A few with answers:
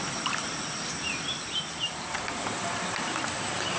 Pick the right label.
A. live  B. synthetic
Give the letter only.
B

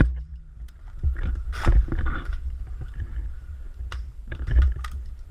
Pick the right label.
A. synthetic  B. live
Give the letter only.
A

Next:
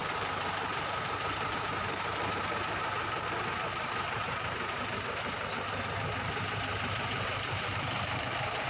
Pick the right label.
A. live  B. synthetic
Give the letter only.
B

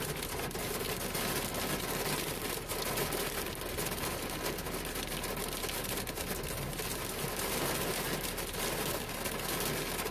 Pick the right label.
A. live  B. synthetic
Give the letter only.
A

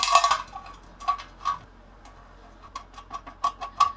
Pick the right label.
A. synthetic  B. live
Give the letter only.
B